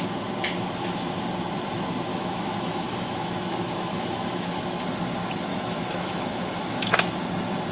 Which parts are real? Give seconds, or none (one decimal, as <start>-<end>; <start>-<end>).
0.0-2.1; 4.6-5.5; 7.0-7.7